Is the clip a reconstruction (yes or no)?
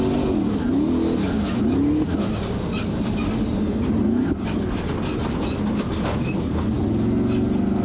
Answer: no